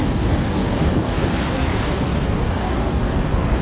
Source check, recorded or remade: remade